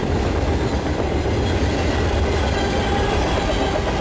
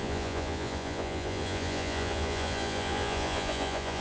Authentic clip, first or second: first